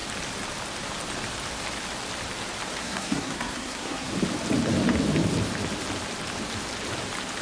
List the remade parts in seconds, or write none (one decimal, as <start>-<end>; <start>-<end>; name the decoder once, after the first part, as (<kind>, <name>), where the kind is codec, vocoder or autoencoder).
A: 2.8-4.1 (codec, SNAC)